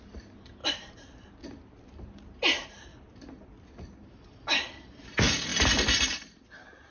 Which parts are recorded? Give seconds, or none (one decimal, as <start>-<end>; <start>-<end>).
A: 0.0-0.6; 2.2-2.9; 5.0-5.5; 6.4-6.9